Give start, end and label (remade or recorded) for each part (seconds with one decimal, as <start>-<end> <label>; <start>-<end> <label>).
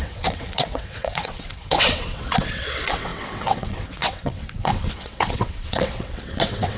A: 0.0-6.8 remade